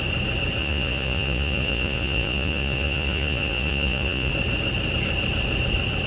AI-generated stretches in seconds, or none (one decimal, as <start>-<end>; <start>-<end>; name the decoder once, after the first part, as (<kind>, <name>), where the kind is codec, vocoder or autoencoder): 0.6-4.3 (vocoder, Vocos)

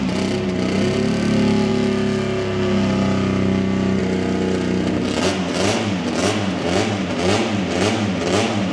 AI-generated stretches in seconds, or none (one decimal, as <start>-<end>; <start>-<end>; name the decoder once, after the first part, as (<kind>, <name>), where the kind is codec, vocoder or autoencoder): none

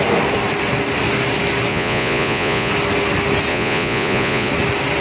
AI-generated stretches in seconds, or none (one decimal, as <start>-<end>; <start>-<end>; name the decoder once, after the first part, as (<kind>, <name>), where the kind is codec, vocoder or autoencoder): 1.7-2.7 (vocoder, Vocos); 3.5-4.5